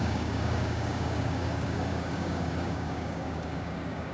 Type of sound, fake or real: fake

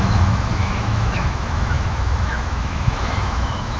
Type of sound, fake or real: fake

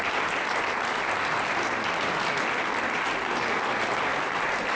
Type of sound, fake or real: real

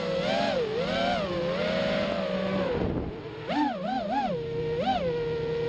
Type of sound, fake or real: real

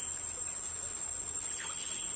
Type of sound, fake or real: real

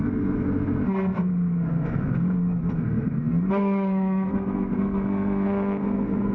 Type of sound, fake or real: fake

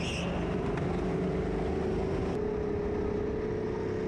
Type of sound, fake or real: real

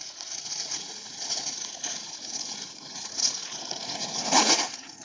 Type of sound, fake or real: fake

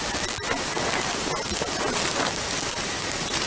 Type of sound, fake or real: real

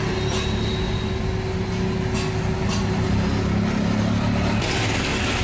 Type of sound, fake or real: real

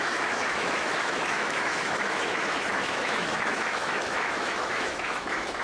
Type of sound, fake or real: fake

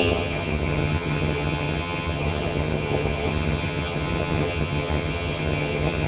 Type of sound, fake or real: fake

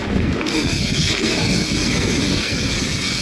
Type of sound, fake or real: fake